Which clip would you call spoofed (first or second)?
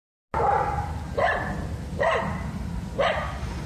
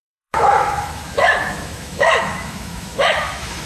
second